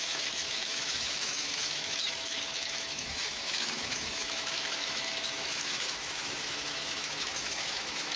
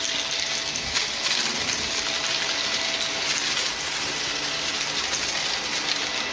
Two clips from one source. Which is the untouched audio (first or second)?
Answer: second